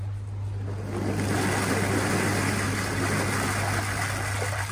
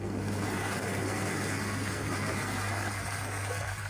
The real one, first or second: first